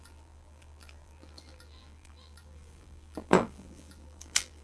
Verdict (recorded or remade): remade